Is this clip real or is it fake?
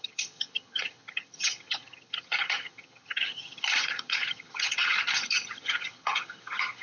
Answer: fake